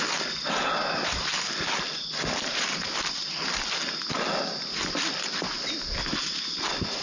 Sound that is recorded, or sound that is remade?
recorded